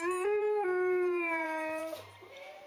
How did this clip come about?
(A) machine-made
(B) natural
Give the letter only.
A